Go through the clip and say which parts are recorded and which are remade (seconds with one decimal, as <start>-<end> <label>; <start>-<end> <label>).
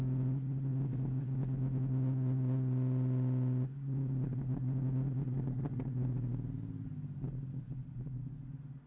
0.0-8.9 recorded